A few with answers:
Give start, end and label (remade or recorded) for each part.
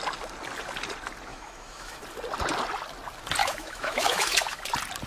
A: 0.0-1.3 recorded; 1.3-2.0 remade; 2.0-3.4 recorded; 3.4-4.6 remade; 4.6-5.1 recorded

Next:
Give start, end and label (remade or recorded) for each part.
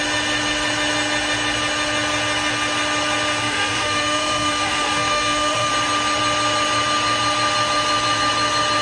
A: 0.0-3.4 recorded; 3.4-5.7 remade; 5.7-8.8 recorded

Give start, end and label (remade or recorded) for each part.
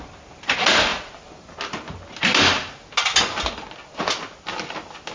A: 0.0-5.1 recorded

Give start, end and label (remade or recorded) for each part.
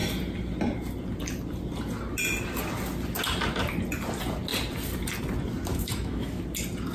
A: 0.0-5.7 recorded; 5.7-6.4 remade; 6.4-6.9 recorded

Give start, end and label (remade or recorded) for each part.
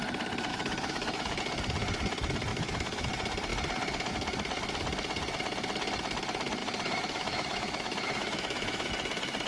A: 0.0-0.5 recorded; 0.5-1.4 remade; 1.4-2.5 recorded; 2.5-3.1 remade; 3.1-6.6 recorded; 6.6-8.9 remade; 8.9-9.5 recorded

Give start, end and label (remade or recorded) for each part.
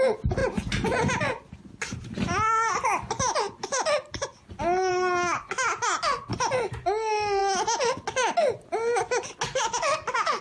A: 0.0-10.4 recorded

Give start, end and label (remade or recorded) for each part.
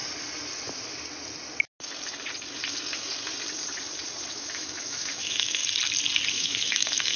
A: 0.0-4.3 recorded; 4.3-5.6 remade; 5.6-6.3 recorded; 6.3-7.2 remade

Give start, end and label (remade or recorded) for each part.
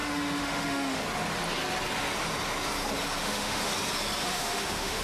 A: 0.0-1.0 remade; 1.0-3.2 recorded; 3.2-3.7 remade; 3.7-4.2 recorded; 4.2-5.0 remade